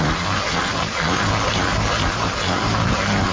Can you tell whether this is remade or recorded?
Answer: recorded